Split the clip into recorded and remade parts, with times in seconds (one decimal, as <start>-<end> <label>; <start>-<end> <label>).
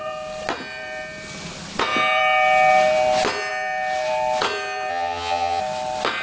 0.0-4.9 recorded; 4.9-5.6 remade; 5.6-6.2 recorded